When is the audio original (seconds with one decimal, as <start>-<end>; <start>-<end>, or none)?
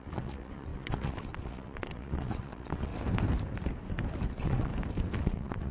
2.9-4.3; 4.7-5.2